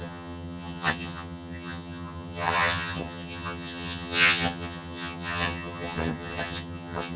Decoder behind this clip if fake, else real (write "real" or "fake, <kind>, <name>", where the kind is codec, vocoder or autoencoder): fake, vocoder, HiFi-GAN